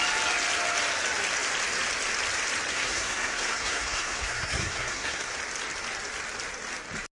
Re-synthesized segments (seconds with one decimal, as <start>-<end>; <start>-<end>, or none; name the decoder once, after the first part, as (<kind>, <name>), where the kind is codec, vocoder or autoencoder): 2.7-5.3 (codec, SNAC)